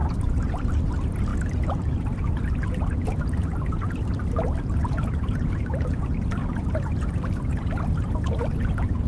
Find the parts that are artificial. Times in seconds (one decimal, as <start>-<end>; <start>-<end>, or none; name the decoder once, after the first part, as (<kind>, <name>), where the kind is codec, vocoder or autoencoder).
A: none